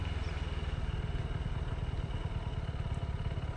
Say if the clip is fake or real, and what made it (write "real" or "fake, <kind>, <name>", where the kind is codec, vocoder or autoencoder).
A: real